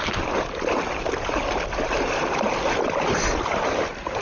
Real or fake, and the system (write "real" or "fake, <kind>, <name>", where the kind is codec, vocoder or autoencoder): real